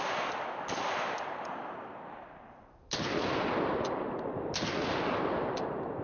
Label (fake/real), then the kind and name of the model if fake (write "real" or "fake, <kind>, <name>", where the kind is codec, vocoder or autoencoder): real